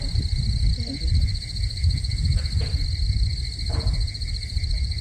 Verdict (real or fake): real